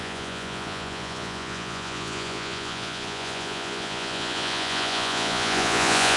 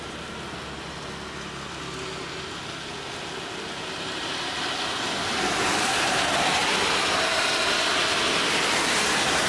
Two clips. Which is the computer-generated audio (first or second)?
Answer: first